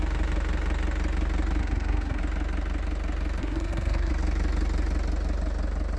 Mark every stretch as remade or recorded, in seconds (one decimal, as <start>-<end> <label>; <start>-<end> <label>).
0.0-1.6 recorded; 1.6-2.2 remade; 2.2-3.4 recorded; 3.4-4.1 remade; 4.1-6.0 recorded